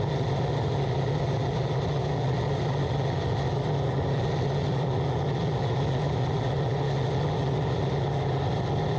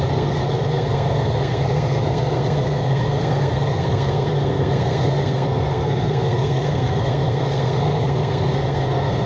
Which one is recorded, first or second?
first